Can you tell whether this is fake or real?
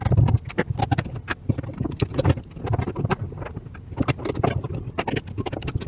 real